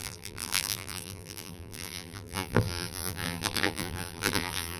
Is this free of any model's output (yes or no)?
no